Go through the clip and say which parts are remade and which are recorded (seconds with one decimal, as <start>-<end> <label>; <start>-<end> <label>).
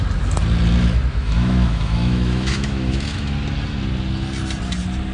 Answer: 0.0-1.1 recorded; 1.1-3.3 remade; 3.3-5.1 recorded